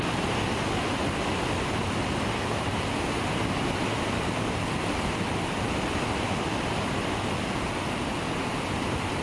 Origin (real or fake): real